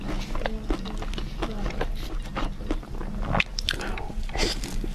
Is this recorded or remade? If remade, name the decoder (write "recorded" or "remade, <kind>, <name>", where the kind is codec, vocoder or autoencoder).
recorded